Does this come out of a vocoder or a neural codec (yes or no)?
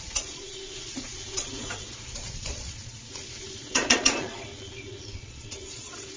yes